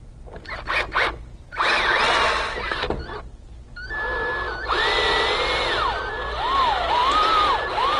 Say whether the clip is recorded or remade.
recorded